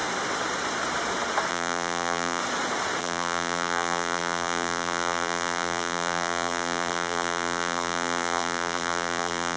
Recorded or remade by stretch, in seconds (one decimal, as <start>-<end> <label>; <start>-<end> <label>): 0.0-1.5 recorded; 1.5-2.4 remade; 2.4-3.0 recorded; 3.0-9.6 remade